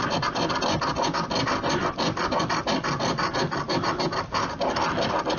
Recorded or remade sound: recorded